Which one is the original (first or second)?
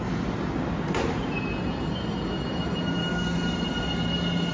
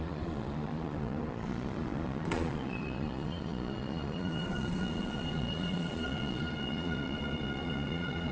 first